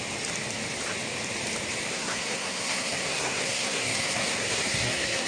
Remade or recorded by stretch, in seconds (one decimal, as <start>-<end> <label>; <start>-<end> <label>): 0.0-1.9 recorded; 1.9-5.3 remade

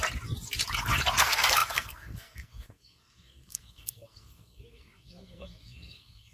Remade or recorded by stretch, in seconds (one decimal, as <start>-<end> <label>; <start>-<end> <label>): 0.0-1.2 recorded; 1.2-6.3 remade

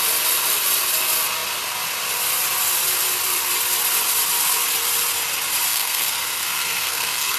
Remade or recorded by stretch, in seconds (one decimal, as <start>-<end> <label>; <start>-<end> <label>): 0.0-5.7 recorded; 5.7-7.4 remade

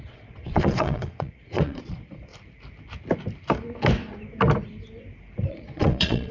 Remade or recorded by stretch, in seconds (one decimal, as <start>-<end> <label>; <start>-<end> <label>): 0.0-2.3 remade; 2.3-5.5 recorded; 5.5-6.3 remade

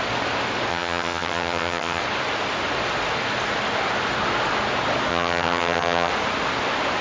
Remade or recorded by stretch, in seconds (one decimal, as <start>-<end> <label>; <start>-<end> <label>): 0.0-0.7 recorded; 0.7-2.0 remade; 2.0-5.1 recorded; 5.1-6.1 remade; 6.1-7.0 recorded

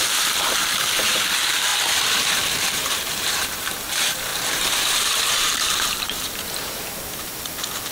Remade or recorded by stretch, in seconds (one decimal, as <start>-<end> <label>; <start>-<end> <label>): 0.0-7.9 remade

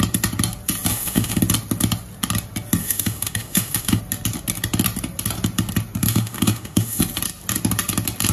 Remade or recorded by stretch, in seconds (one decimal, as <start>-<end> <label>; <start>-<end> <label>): 0.0-0.9 recorded; 0.9-1.4 remade; 1.4-2.8 recorded; 2.8-4.0 remade; 4.0-6.0 recorded; 6.0-7.0 remade; 7.0-8.3 recorded